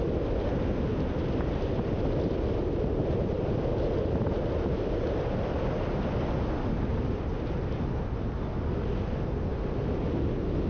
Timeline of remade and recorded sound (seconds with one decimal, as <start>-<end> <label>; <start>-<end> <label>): 0.0-10.7 recorded